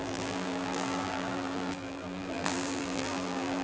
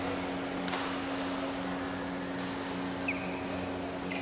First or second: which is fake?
first